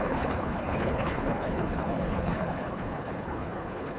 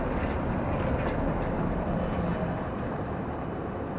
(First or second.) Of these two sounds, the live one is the second